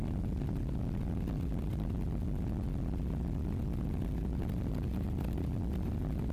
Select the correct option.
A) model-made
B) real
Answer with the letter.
B